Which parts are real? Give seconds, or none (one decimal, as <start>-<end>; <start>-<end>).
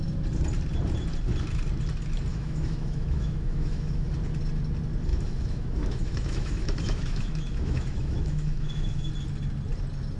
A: 0.0-2.3; 4.1-5.1; 9.1-10.2